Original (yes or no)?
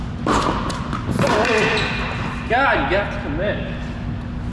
yes